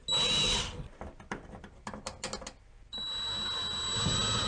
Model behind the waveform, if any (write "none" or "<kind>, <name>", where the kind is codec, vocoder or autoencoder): none